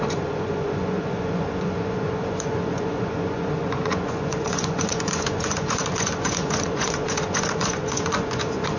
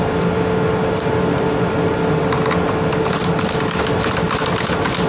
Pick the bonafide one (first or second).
second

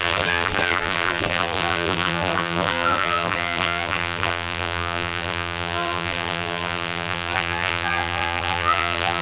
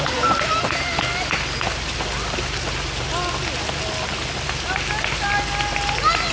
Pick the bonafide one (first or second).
second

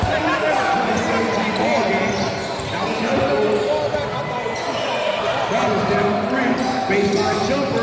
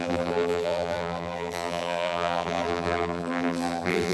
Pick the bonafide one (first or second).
first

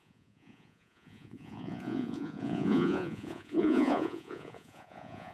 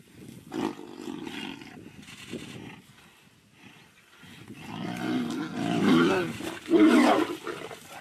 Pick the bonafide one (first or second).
second